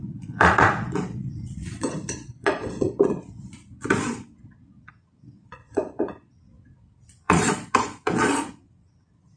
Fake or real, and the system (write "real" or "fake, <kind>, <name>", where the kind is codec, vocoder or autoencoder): fake, vocoder, Vocos